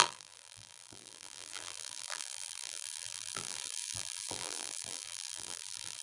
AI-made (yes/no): yes